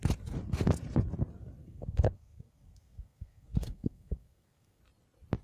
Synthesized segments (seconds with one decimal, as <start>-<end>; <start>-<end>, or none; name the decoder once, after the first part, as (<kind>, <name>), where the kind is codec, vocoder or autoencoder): 1.6-4.8 (codec, SNAC)